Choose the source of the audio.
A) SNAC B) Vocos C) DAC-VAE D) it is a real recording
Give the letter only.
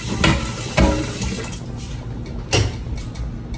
D